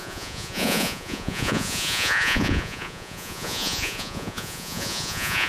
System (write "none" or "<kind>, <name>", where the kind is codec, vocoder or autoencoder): vocoder, Vocos